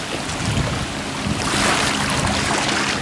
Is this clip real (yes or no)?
yes